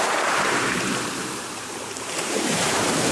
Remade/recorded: remade